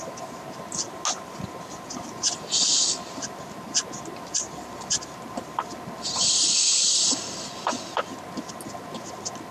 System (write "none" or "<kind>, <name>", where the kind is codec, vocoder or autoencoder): none